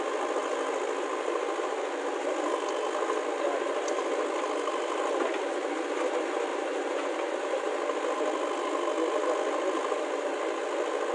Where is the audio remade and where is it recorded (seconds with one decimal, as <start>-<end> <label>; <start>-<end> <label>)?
0.0-6.5 recorded; 6.5-7.1 remade; 7.1-11.1 recorded